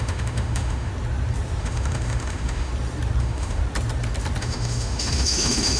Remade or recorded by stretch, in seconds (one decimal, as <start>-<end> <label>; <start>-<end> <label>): 0.0-0.9 remade; 0.9-1.6 recorded; 1.6-2.7 remade; 2.7-3.2 recorded; 3.2-3.6 remade; 3.6-4.4 recorded; 4.4-5.8 remade